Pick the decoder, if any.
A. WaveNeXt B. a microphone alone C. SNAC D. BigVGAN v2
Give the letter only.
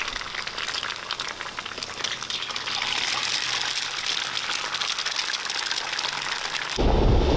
B